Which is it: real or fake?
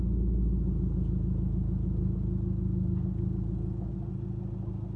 real